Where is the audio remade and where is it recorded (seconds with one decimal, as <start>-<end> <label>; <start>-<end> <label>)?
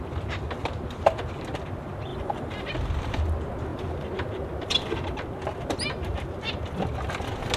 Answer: 0.0-2.1 recorded; 2.1-2.7 remade; 2.7-7.6 recorded